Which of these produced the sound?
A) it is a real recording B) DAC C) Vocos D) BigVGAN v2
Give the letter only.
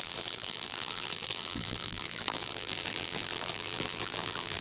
D